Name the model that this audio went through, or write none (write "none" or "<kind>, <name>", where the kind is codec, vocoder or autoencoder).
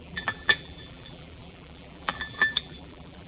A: vocoder, BigVGAN v2